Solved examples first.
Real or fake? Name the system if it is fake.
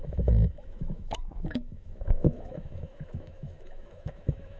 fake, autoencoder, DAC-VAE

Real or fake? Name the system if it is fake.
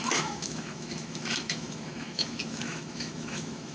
fake, autoencoder, DAC-VAE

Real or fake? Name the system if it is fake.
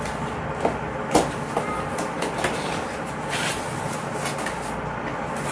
real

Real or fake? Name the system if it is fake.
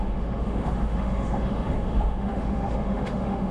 fake, autoencoder, DAC-VAE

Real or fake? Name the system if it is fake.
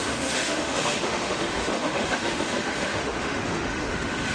fake, autoencoder, DAC-VAE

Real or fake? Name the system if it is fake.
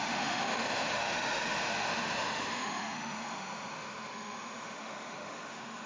fake, autoencoder, DAC-VAE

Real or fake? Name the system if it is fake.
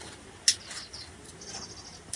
real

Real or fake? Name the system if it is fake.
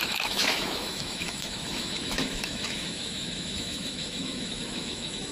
fake, autoencoder, DAC-VAE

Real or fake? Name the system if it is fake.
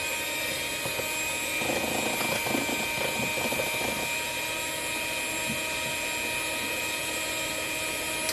real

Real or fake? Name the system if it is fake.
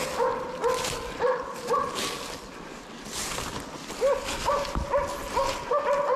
real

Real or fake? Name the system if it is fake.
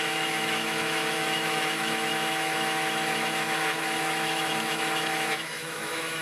fake, autoencoder, DAC-VAE